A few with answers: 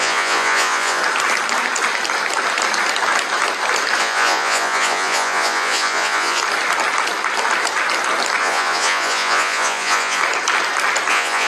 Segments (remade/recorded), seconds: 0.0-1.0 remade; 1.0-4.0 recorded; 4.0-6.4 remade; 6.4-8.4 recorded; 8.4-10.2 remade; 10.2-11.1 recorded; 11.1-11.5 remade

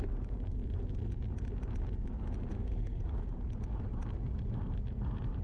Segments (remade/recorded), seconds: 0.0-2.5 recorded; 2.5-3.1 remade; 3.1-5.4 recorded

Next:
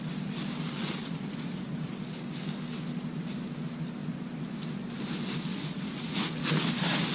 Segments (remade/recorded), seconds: 0.0-1.0 recorded; 1.0-1.9 remade; 1.9-5.5 recorded; 5.5-6.3 remade; 6.3-7.1 recorded

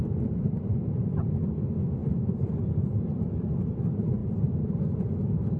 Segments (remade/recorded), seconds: 0.0-1.1 remade; 1.1-2.0 recorded; 2.0-2.5 remade; 2.5-2.9 recorded; 2.9-3.5 remade; 3.5-5.6 recorded

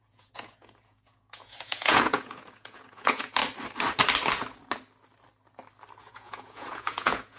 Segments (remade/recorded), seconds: 0.0-3.4 remade; 3.4-6.0 recorded; 6.0-7.4 remade

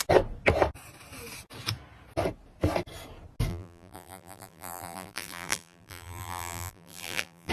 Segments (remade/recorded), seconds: 0.0-3.5 recorded; 3.5-7.5 remade